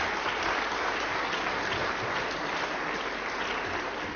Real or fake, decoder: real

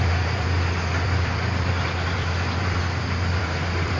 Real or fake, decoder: fake, vocoder, BigVGAN v2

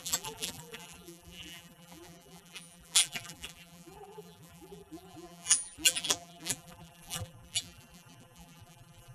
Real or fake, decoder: fake, vocoder, BigVGAN v2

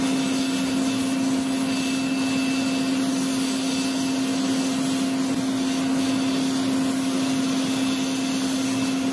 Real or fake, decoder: real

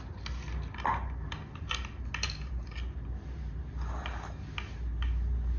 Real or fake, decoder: real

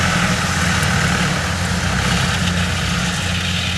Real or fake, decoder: real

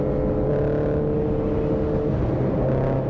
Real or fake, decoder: real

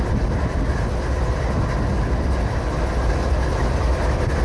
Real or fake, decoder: real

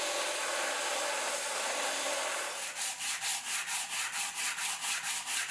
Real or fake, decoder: fake, vocoder, BigVGAN v2